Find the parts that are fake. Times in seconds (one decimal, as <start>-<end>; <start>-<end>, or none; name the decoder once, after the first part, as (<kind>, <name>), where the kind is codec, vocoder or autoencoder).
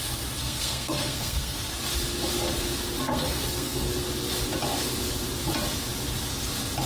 0.4-1.7 (codec, SNAC); 3.1-3.9